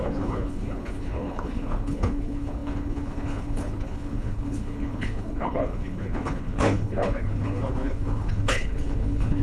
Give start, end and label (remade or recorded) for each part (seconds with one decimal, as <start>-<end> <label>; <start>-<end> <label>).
0.0-9.4 remade